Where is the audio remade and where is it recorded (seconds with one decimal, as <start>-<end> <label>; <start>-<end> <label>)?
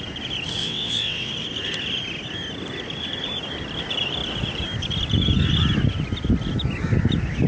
0.0-0.6 recorded; 0.6-1.3 remade; 1.3-7.5 recorded